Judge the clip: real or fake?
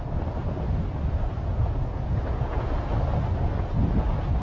real